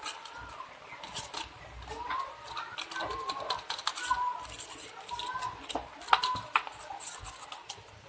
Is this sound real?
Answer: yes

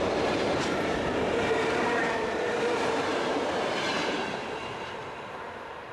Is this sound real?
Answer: no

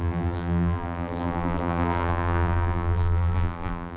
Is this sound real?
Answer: no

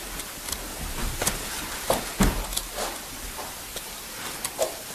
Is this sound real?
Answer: yes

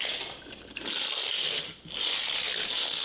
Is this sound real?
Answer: yes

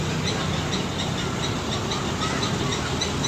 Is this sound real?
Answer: yes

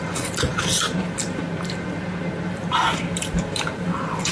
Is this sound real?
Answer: no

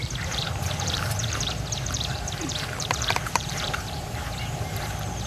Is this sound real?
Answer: no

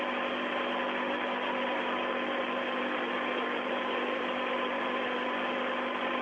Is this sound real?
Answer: yes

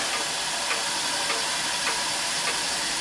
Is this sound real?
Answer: yes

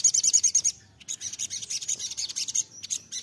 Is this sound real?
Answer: yes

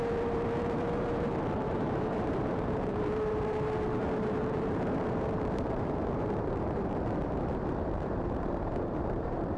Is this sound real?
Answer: no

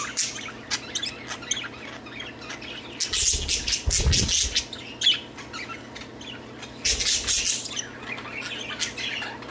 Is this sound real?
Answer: yes